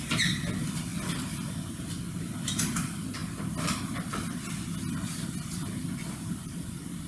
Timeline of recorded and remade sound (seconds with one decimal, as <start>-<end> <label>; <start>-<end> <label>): 0.0-7.1 recorded